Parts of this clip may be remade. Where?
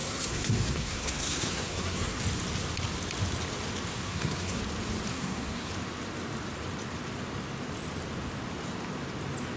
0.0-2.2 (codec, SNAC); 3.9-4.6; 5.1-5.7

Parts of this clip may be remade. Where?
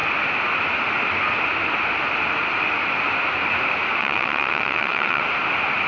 4.0-5.2 (vocoder, WaveNeXt)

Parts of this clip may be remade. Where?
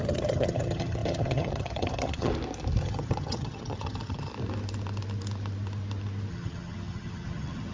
0.0-2.3 (vocoder, HiFi-GAN); 2.8-4.3; 6.3-7.7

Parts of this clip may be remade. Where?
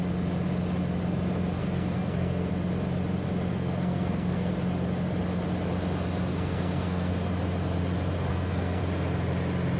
1.6-2.5 (codec, SNAC); 3.5-4.5; 6.3-7.1; 8.3-8.8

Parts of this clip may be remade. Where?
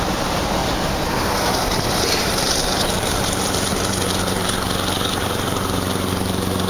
0.0-0.6 (vocoder, BigVGAN v2); 1.9-6.7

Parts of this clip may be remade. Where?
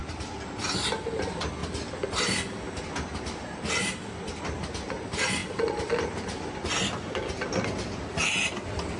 none